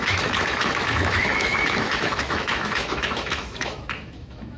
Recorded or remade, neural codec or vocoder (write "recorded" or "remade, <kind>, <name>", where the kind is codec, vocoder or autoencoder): remade, autoencoder, DAC-VAE